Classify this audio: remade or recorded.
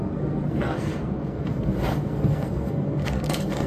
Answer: remade